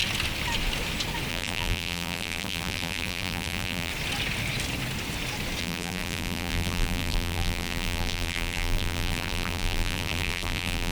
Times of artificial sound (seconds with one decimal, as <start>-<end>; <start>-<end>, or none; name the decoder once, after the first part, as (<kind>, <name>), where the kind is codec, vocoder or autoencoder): 1.3-3.9 (vocoder, BigVGAN v2); 5.6-10.9